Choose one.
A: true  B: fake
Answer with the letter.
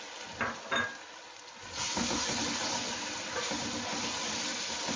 A